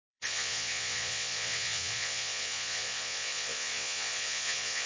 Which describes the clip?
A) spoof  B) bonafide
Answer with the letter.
A